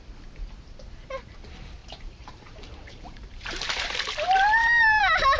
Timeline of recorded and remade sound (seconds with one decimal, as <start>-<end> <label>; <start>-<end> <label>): 0.0-1.8 recorded; 1.8-5.0 remade; 5.0-5.4 recorded